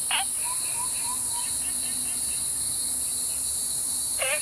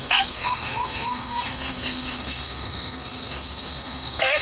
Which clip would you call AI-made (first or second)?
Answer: second